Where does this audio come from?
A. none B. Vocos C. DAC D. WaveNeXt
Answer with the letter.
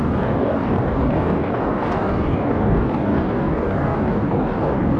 C